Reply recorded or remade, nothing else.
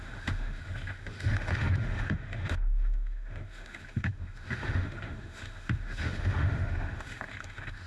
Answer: remade